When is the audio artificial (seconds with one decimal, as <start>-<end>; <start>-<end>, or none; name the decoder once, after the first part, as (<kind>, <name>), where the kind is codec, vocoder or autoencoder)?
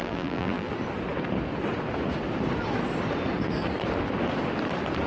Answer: 0.0-0.7 (vocoder, BigVGAN v2)